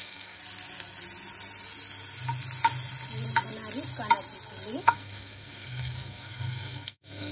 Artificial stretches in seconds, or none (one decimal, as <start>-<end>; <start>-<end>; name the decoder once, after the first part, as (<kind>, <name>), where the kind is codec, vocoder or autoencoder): 0.0-0.4 (codec, SNAC); 4.8-7.3